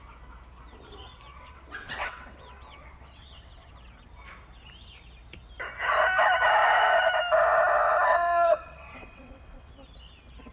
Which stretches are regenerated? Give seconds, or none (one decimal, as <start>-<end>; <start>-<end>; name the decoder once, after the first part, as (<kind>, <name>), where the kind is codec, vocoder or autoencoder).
1.3-3.7 (vocoder, WaveNeXt); 8.1-9.7